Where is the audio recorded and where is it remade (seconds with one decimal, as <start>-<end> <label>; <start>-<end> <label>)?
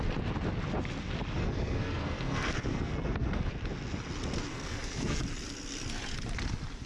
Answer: 0.0-1.4 recorded; 1.4-3.5 remade; 3.5-4.5 recorded; 4.5-5.2 remade; 5.2-6.9 recorded